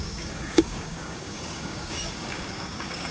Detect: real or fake fake